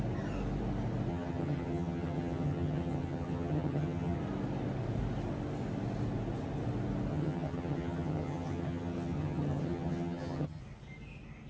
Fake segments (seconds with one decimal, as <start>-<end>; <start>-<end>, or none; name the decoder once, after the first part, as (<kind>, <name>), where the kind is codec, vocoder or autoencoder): 1.1-4.2 (vocoder, HiFi-GAN); 7.1-10.6